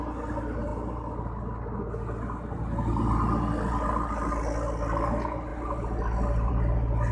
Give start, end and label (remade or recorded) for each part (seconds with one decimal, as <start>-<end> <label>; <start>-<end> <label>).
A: 0.0-7.1 recorded